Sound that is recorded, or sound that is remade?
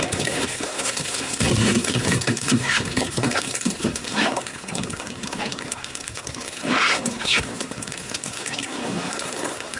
remade